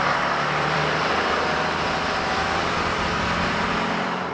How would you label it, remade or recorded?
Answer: remade